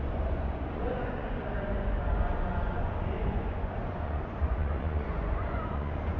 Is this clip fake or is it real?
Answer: fake